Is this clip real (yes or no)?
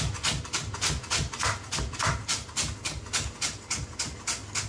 yes